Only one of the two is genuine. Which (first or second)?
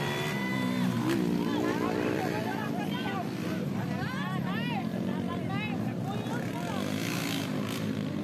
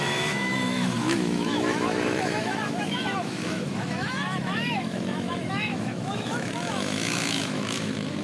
first